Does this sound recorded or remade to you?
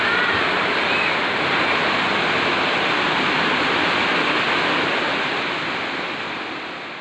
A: recorded